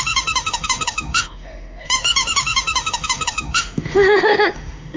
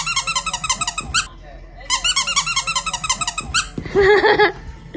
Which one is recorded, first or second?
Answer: second